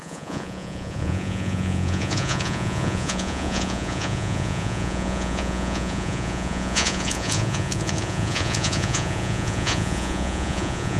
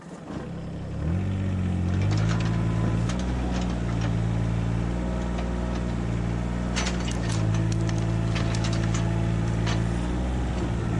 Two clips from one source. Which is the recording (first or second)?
second